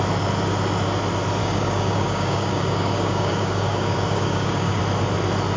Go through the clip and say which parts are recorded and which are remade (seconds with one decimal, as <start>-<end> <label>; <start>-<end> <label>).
0.0-1.4 recorded; 1.4-4.8 remade; 4.8-5.6 recorded